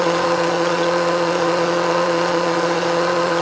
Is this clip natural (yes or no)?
no